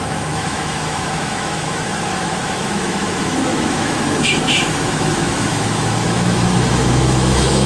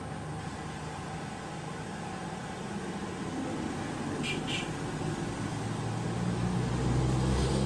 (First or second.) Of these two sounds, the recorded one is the second